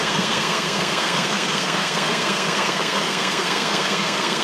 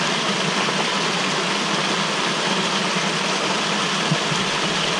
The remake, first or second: first